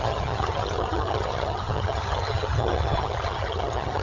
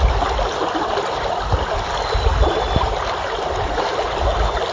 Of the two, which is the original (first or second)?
second